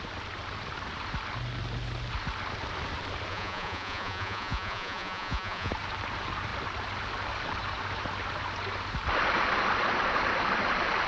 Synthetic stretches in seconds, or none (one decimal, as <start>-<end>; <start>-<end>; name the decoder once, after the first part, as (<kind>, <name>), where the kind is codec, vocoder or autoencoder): 3.3-5.7 (vocoder, Vocos)